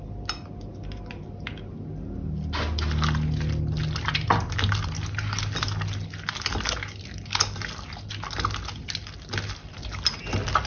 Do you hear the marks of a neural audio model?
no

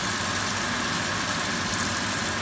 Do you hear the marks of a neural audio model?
no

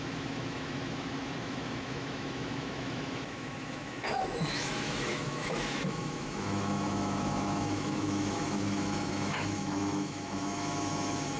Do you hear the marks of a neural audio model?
yes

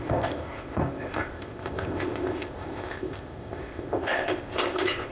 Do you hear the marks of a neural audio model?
yes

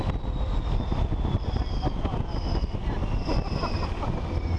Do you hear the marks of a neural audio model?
no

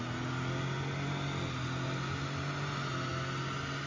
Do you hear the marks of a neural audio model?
no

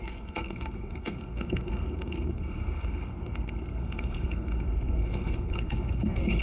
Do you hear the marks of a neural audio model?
yes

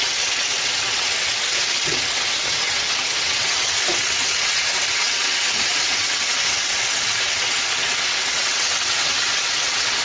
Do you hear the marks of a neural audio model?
yes